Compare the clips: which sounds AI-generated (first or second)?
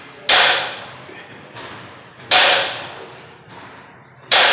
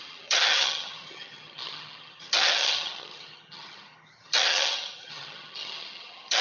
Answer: second